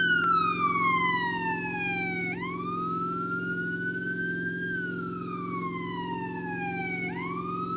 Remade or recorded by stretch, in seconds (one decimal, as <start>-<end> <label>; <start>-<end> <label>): 0.0-2.2 recorded; 2.2-6.8 remade; 6.8-7.8 recorded